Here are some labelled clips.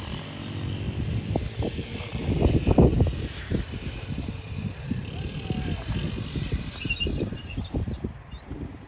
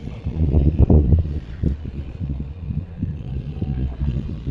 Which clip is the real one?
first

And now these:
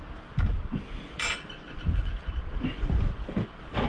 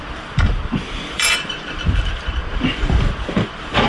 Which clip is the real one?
first